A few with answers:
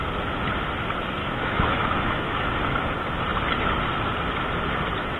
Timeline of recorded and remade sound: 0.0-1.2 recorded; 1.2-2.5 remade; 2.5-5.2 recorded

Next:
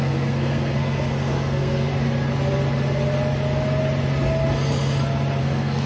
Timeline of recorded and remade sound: 0.0-1.9 remade; 1.9-5.4 recorded; 5.4-5.9 remade

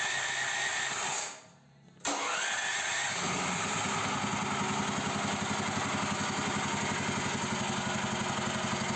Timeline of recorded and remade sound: 0.0-9.0 recorded

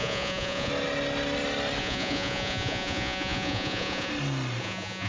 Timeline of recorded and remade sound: 0.0-0.7 remade; 0.7-1.8 recorded; 1.8-4.1 remade; 4.1-4.6 recorded; 4.6-5.1 remade